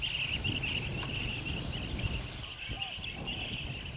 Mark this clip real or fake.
real